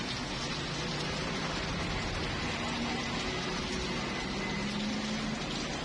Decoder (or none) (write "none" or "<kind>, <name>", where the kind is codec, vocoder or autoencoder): none